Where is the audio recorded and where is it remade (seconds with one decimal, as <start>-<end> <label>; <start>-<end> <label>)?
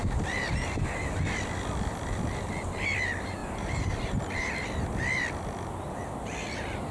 0.0-3.4 recorded; 3.4-4.2 remade; 4.2-6.9 recorded